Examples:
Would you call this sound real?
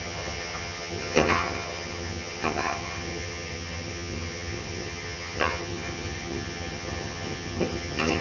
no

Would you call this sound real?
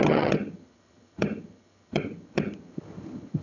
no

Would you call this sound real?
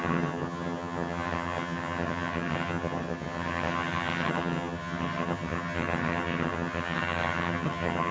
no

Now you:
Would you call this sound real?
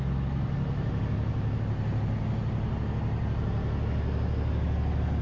yes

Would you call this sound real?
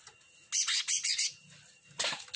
yes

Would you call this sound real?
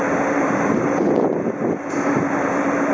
yes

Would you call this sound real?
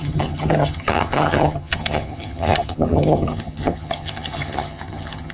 no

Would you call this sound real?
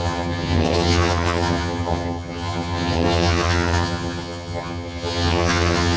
no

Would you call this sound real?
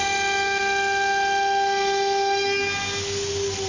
yes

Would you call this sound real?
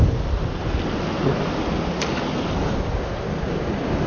yes